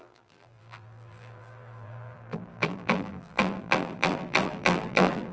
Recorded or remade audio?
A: remade